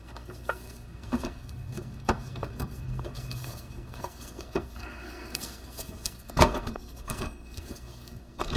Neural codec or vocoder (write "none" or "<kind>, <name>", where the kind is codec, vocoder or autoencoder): codec, SNAC